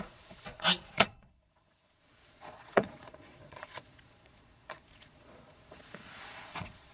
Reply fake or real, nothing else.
fake